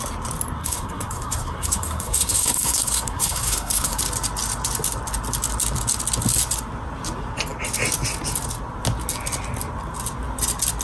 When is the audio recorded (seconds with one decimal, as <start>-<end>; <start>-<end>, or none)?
0.0-0.6; 4.0-10.8